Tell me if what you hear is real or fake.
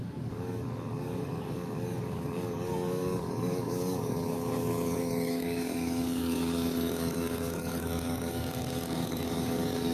fake